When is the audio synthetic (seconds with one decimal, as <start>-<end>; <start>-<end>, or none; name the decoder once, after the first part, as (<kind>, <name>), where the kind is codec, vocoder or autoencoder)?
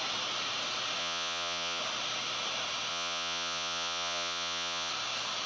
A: 1.0-1.8 (vocoder, Vocos); 2.9-4.9